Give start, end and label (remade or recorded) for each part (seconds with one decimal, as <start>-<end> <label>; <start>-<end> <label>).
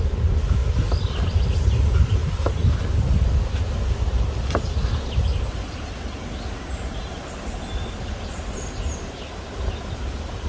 0.0-10.5 recorded